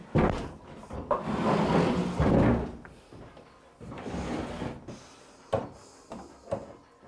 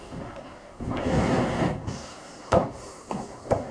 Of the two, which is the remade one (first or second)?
second